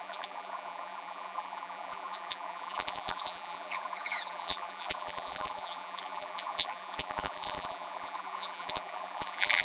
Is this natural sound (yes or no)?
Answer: no